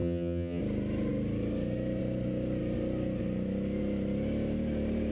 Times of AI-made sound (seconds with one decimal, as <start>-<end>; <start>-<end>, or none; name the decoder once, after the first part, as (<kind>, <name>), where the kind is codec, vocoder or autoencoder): 0.0-0.6 (vocoder, HiFi-GAN)